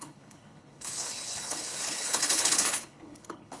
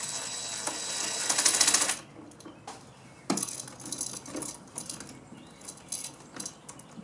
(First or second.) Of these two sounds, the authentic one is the second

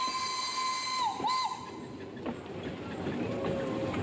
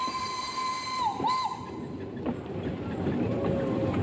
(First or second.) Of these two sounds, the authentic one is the first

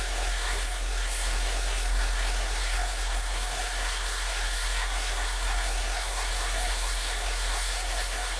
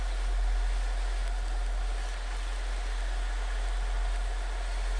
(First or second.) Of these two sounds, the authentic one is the second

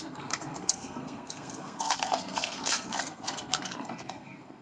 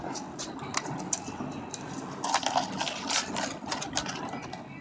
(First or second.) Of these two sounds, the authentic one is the second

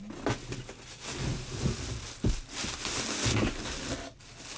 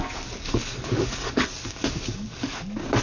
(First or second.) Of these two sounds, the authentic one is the first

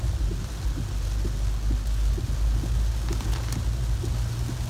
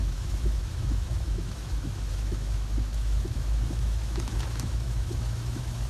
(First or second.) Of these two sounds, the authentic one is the first